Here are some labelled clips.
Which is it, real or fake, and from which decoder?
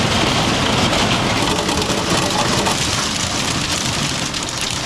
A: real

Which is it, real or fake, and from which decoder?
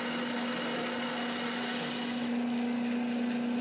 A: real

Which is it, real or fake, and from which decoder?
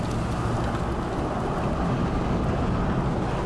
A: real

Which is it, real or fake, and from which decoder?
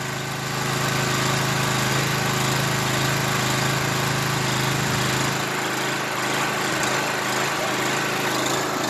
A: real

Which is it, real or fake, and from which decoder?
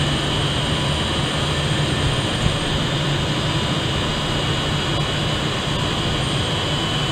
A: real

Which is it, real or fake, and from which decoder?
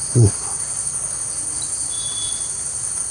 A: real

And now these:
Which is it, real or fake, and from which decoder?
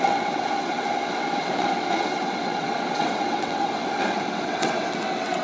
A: fake, vocoder, WaveNeXt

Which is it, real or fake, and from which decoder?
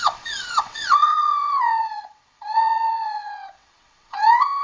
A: fake, vocoder, WaveNeXt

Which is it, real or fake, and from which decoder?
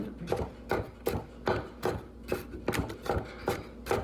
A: real